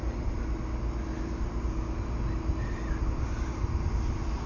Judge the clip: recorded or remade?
recorded